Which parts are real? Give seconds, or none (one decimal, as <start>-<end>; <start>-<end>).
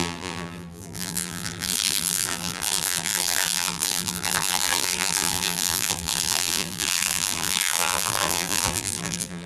none